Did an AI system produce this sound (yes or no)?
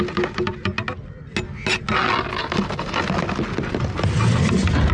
no